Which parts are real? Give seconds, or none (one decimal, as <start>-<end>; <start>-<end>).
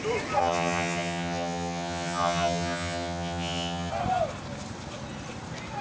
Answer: 0.0-0.4; 3.9-5.8